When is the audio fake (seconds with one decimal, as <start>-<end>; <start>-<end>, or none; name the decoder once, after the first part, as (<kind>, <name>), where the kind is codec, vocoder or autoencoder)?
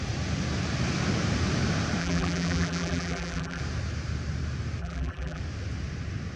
2.0-3.6 (vocoder, BigVGAN v2); 4.8-5.4